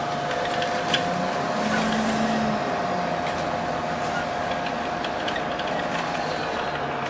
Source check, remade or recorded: recorded